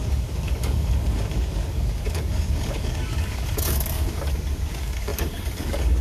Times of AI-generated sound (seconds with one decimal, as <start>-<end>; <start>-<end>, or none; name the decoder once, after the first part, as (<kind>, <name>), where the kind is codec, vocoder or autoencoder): 0.0-6.0 (codec, DAC)